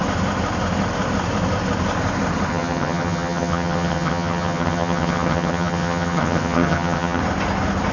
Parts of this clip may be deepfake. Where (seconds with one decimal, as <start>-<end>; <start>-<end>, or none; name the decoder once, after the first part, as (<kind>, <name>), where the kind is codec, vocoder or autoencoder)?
2.5-7.2 (vocoder, HiFi-GAN)